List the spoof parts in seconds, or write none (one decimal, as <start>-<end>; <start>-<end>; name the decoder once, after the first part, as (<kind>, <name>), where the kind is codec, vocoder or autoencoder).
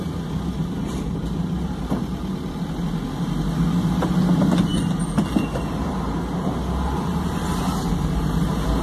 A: none